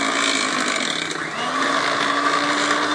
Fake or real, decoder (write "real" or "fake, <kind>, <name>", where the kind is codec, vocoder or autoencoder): real